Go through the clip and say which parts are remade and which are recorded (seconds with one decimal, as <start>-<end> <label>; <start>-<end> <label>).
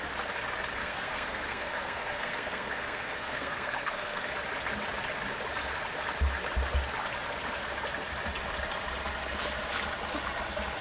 0.0-0.8 recorded; 0.8-4.3 remade; 4.3-10.8 recorded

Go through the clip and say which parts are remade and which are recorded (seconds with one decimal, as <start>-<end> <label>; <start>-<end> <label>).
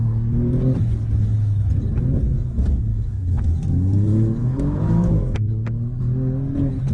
0.0-2.9 recorded; 2.9-3.5 remade; 3.5-4.1 recorded; 4.1-5.5 remade; 5.5-6.9 recorded